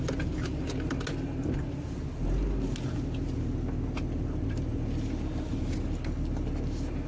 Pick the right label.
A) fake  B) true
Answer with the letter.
B